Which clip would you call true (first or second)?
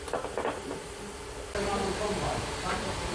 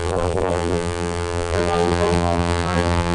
first